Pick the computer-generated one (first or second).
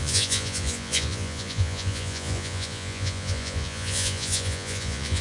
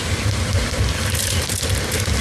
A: first